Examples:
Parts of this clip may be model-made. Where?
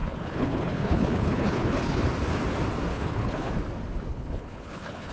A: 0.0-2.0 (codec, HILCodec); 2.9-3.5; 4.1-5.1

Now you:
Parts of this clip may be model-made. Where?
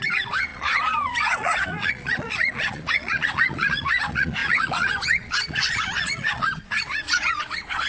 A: 0.0-7.9 (vocoder, Vocos)